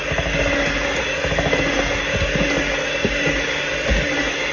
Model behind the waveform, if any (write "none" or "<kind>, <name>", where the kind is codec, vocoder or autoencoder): none